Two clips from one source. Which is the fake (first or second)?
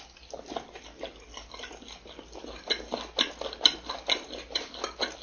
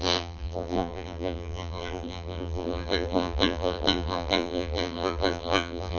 second